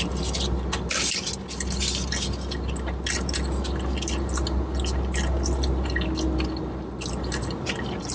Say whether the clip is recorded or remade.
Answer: recorded